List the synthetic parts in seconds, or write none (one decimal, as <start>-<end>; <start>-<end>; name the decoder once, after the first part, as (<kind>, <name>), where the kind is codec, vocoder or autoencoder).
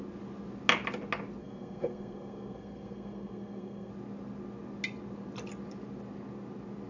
1.4-3.9 (codec, SNAC)